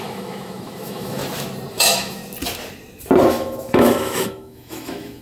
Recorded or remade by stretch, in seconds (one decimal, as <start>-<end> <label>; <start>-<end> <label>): 0.0-1.2 remade; 1.2-1.7 recorded; 1.7-2.2 remade; 2.2-3.3 recorded; 3.3-5.2 remade